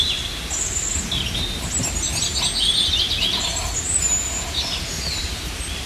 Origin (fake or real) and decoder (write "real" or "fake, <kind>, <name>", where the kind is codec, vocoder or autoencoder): real